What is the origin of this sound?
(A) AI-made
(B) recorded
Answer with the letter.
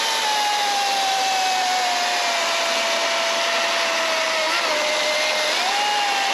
B